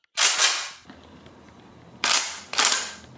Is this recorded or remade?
recorded